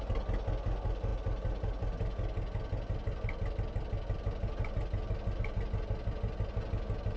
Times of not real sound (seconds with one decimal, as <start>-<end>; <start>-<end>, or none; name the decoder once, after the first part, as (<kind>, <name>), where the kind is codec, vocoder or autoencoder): none